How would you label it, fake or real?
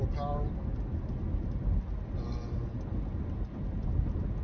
real